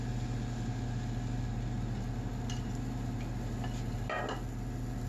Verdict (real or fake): real